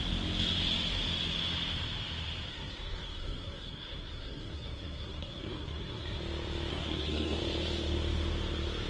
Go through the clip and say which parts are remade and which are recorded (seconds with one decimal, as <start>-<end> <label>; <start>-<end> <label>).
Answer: 0.0-2.5 recorded; 2.5-6.2 remade; 6.2-6.7 recorded; 6.7-7.4 remade; 7.4-8.9 recorded